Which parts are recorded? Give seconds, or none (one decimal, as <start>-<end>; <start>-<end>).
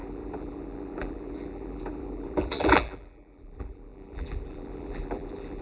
none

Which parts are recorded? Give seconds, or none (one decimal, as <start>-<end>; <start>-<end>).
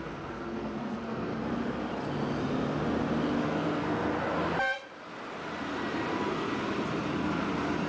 1.3-3.4; 4.0-7.9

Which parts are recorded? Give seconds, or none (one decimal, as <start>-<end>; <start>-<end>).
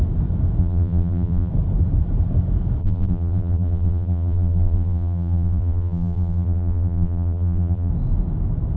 0.0-0.6; 1.5-2.8; 7.9-8.8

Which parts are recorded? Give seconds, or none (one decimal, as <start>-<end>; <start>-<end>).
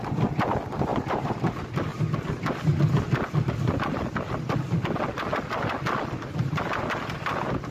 0.0-0.9; 1.5-1.9; 2.4-7.7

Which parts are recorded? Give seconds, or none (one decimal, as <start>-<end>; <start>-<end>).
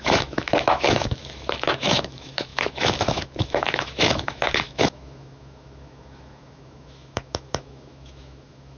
none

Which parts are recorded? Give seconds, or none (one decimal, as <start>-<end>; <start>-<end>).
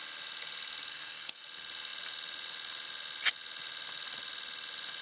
0.0-0.9; 1.4-5.0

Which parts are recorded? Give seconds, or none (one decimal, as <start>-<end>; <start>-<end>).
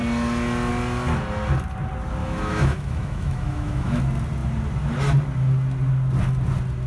0.0-2.2; 4.0-6.9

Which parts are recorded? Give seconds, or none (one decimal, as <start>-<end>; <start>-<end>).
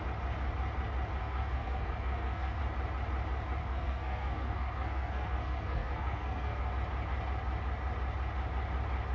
0.0-1.2; 2.6-3.6; 6.7-9.1